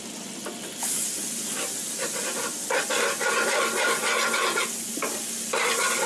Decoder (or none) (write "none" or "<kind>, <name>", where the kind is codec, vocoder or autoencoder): none